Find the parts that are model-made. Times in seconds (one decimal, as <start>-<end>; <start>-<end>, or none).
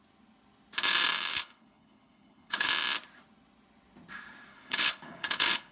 1.3-2.7; 4.5-5.7